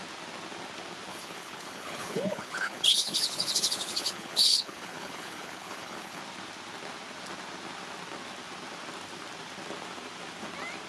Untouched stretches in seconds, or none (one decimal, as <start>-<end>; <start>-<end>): 0.0-1.1; 6.2-10.9